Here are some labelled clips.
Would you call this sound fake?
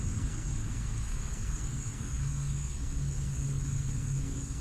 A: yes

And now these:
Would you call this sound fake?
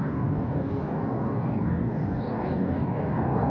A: yes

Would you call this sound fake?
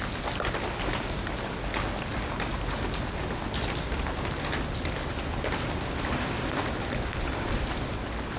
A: no